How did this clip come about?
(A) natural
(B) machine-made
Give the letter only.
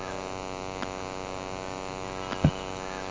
A